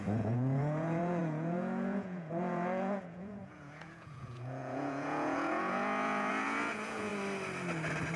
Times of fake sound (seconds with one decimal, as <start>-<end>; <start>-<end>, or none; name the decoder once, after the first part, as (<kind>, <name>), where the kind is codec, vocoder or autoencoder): 0.0-7.1 (vocoder, Vocos)